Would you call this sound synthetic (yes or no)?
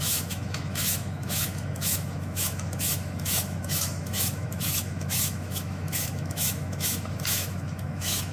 yes